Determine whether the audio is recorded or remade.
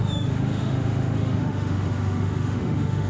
remade